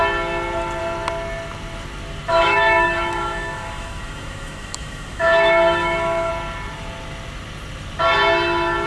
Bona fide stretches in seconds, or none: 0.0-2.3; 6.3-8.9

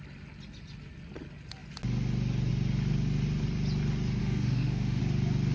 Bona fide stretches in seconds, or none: 0.0-4.2; 5.0-5.5

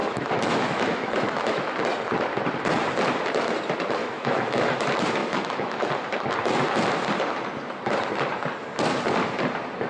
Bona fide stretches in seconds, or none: 1.8-4.0; 4.7-5.2; 5.9-9.9

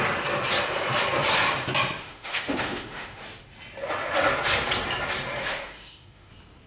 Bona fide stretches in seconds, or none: 0.0-2.0; 3.2-5.4; 6.3-6.7

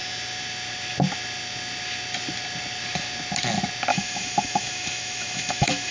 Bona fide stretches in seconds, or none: 0.0-3.9